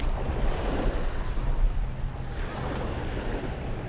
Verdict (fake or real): real